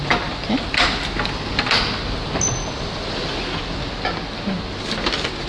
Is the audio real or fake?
real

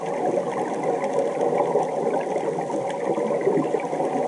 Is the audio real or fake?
real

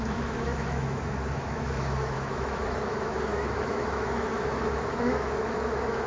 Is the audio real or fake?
fake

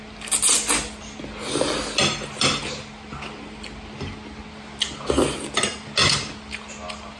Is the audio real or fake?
real